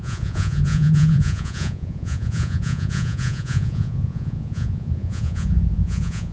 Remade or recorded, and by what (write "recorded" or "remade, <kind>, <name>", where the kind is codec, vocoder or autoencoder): remade, vocoder, Vocos